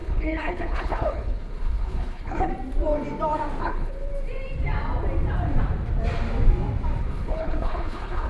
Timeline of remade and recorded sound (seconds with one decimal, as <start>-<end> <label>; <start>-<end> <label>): 0.0-2.5 remade; 2.5-3.6 recorded; 3.6-4.1 remade; 4.1-7.0 recorded; 7.0-8.3 remade